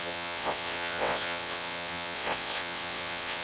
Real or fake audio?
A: fake